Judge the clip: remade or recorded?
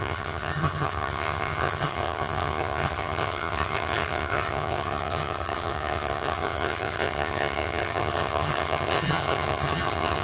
remade